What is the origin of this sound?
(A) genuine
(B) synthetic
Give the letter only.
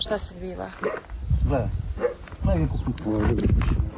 A